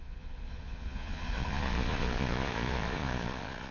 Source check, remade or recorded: remade